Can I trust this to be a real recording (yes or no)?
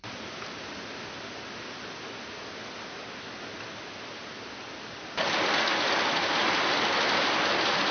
yes